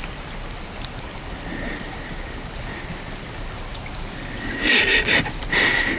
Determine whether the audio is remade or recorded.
recorded